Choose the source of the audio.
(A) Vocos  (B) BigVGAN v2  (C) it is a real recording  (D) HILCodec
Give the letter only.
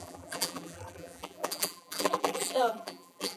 B